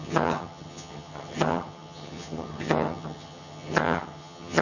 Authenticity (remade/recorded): remade